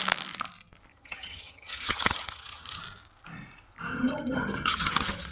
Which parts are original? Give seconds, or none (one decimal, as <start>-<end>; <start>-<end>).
0.0-0.9; 2.8-3.9